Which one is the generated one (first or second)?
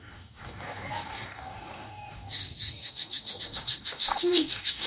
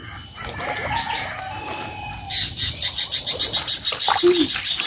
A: first